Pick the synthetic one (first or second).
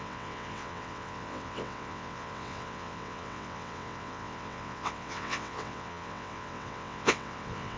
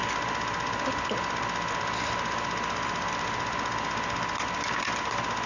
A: first